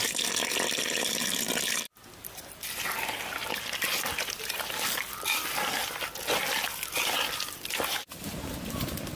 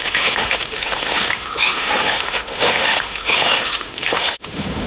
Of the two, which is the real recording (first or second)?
first